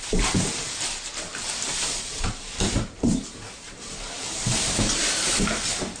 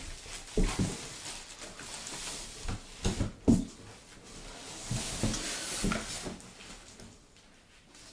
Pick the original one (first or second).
second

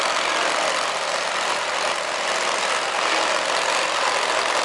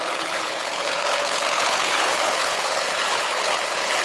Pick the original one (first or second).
first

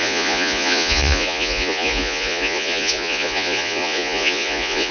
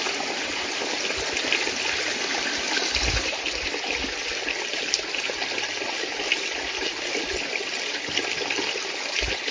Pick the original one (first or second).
second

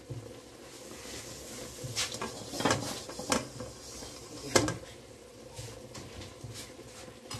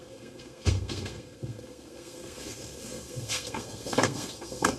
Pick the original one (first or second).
first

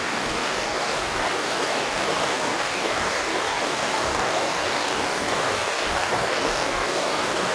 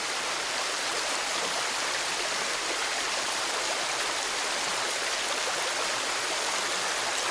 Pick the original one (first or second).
second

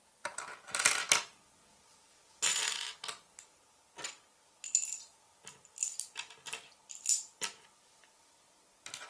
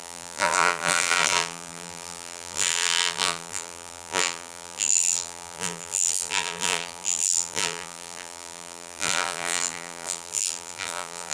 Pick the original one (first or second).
first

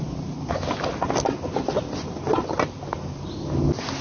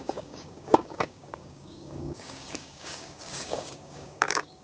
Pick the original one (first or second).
first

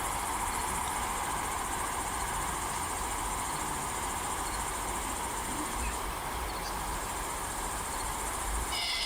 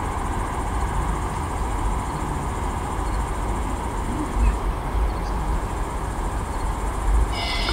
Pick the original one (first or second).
second